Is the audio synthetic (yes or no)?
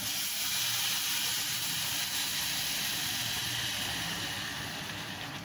no